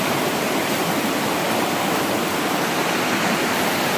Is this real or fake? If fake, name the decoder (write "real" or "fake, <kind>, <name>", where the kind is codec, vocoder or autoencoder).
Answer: fake, vocoder, BigVGAN v2